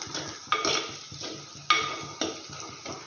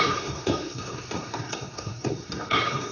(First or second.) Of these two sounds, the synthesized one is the second